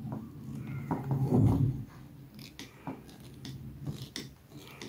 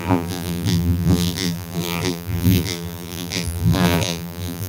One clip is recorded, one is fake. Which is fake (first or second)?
second